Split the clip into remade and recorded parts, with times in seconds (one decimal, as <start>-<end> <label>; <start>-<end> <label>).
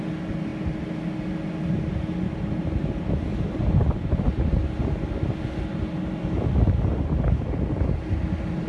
0.0-8.7 recorded